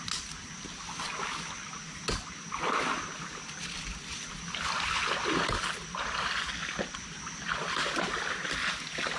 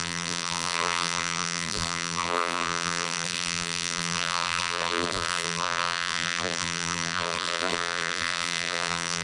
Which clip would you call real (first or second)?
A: first